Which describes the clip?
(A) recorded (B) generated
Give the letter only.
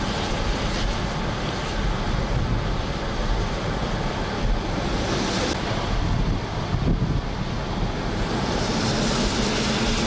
A